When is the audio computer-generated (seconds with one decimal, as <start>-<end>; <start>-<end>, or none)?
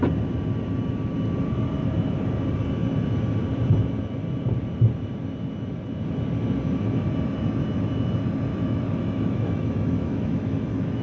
8.5-11.0